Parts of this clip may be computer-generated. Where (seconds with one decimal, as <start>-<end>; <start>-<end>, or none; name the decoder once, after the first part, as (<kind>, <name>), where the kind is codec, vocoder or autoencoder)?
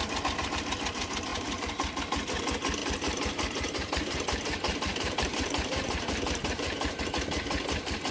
1.3-2.0 (vocoder, BigVGAN v2); 2.8-7.0